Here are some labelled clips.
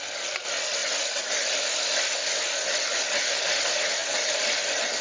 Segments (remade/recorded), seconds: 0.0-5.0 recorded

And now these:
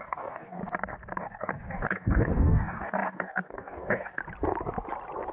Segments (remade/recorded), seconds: 0.0-0.6 remade; 0.6-1.2 recorded; 1.2-4.2 remade; 4.2-5.3 recorded

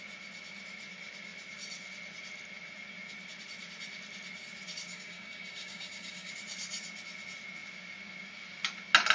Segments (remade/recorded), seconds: 0.0-4.9 recorded; 4.9-6.3 remade; 6.3-9.1 recorded

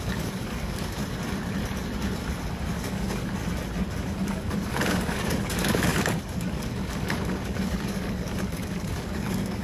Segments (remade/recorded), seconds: 0.0-1.0 remade; 1.0-2.6 recorded; 2.6-3.4 remade; 3.4-4.0 recorded; 4.0-9.6 remade

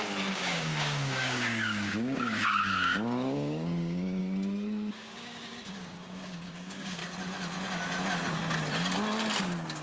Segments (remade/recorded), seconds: 0.0-4.2 remade; 4.2-4.9 recorded; 4.9-7.0 remade; 7.0-9.4 recorded; 9.4-9.8 remade

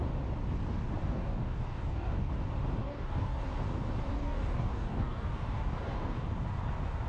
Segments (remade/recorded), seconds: 0.0-1.0 recorded; 1.0-2.3 remade; 2.3-2.8 recorded; 2.8-3.4 remade; 3.4-4.1 recorded; 4.1-6.2 remade; 6.2-7.1 recorded

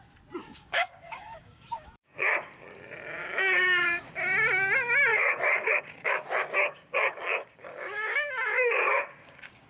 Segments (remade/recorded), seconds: 0.0-0.4 recorded; 0.4-2.8 remade; 2.8-3.2 recorded; 3.2-4.1 remade; 4.1-5.1 recorded; 5.1-9.7 remade